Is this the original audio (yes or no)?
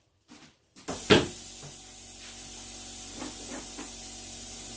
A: yes